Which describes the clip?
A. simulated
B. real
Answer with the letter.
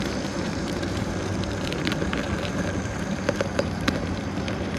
A